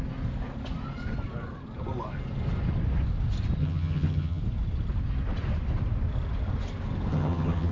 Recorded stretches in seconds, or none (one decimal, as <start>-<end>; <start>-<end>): 0.0-3.6; 4.4-7.1